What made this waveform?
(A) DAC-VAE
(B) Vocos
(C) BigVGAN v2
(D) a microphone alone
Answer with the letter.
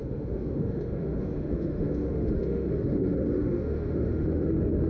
A